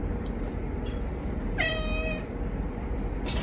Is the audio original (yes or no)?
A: yes